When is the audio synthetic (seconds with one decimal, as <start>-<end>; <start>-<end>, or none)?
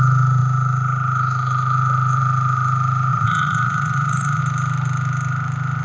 3.1-4.4